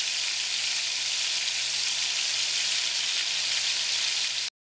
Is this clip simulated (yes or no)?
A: no